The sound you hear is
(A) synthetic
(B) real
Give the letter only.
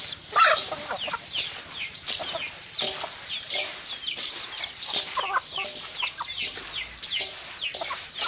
B